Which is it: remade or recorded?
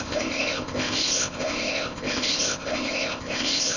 remade